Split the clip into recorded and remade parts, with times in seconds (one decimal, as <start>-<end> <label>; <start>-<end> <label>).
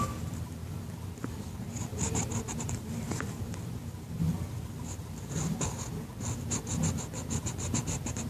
0.0-0.6 recorded; 0.6-1.5 remade; 1.5-1.9 recorded; 1.9-5.3 remade; 5.3-8.3 recorded